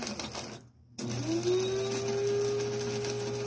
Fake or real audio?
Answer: real